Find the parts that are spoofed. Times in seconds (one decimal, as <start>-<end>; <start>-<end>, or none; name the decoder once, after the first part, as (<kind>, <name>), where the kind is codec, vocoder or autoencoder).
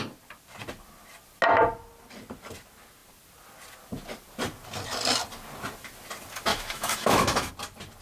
6.5-7.5 (autoencoder, DAC-VAE)